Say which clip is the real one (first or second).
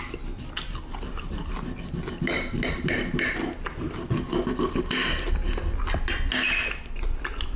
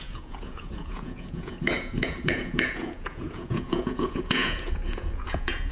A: first